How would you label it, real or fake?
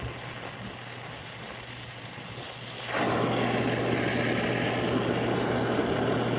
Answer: real